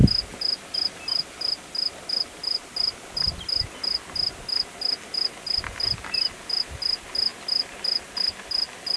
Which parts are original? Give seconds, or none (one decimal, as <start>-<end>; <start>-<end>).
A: 0.0-9.0